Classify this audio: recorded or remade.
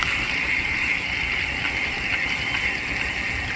recorded